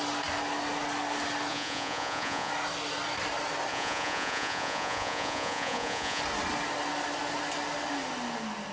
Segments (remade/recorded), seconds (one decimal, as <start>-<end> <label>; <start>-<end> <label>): 0.0-1.5 recorded; 1.5-2.5 remade; 2.5-3.7 recorded; 3.7-6.2 remade; 6.2-8.7 recorded